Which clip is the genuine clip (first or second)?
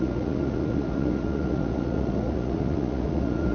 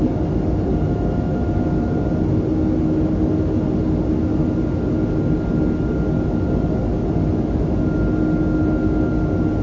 second